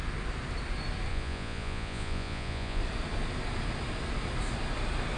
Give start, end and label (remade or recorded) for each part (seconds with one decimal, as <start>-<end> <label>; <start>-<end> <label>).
0.0-1.1 recorded; 1.1-2.8 remade; 2.8-5.2 recorded